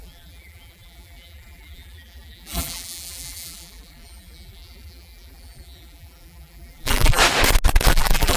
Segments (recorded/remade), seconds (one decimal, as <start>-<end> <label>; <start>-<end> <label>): 0.0-7.2 remade; 7.2-7.9 recorded; 7.9-8.4 remade